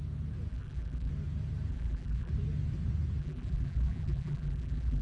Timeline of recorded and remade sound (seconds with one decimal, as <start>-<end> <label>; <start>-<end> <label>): 0.0-0.5 recorded; 0.5-1.1 remade; 1.1-1.7 recorded; 1.7-2.3 remade; 2.3-3.2 recorded; 3.2-5.0 remade